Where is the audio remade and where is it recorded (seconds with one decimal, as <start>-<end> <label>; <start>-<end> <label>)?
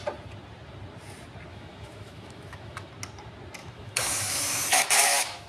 0.0-1.5 recorded; 1.5-2.9 remade; 2.9-3.6 recorded; 3.6-5.5 remade